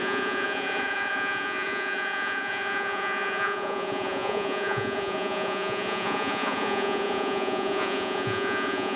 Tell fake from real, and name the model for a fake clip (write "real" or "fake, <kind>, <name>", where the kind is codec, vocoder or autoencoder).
fake, vocoder, Vocos